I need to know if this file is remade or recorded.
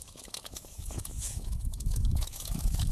remade